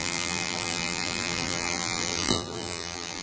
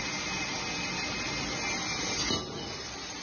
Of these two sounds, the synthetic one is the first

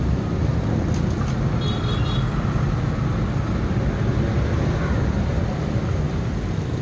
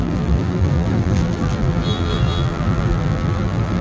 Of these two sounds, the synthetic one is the second